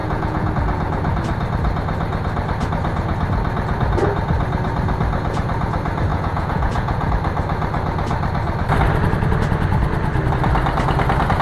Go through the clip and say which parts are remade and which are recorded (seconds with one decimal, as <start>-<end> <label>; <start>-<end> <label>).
0.0-0.5 remade; 0.5-6.1 recorded; 6.1-7.1 remade; 7.1-11.4 recorded

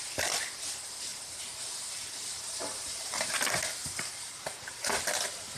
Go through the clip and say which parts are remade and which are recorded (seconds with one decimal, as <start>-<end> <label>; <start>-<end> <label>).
0.0-1.1 recorded; 1.1-3.3 remade; 3.3-3.8 recorded; 3.8-4.6 remade; 4.6-5.6 recorded

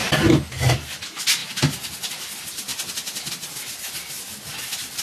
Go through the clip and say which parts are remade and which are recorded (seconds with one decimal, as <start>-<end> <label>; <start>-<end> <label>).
0.0-0.7 remade; 0.7-5.0 recorded

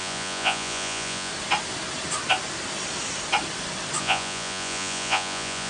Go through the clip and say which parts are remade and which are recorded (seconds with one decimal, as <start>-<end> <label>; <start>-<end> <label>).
0.0-1.3 remade; 1.3-4.0 recorded; 4.0-5.7 remade

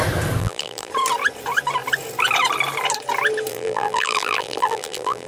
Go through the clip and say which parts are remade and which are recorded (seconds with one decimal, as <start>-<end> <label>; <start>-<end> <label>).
0.0-0.4 recorded; 0.4-0.9 remade; 0.9-3.5 recorded; 3.5-5.3 remade

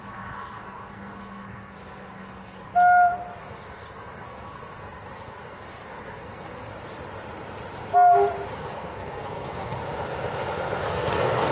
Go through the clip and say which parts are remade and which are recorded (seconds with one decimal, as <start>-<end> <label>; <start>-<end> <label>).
0.0-2.7 remade; 2.7-3.4 recorded; 3.4-6.7 remade; 6.7-8.5 recorded; 8.5-9.8 remade; 9.8-10.8 recorded; 10.8-11.5 remade

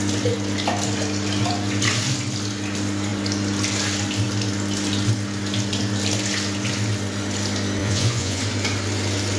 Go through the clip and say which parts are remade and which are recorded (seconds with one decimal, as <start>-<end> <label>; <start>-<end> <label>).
0.0-7.8 recorded; 7.8-8.4 remade; 8.4-9.4 recorded